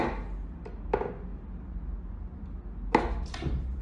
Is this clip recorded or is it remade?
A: recorded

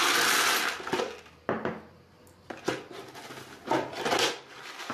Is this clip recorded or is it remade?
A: recorded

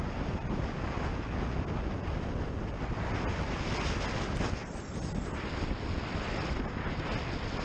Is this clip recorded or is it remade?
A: recorded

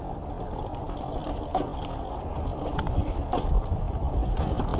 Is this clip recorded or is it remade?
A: recorded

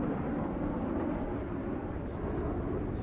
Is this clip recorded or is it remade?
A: recorded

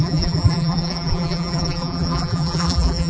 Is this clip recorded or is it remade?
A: remade